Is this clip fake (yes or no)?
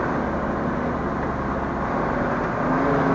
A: no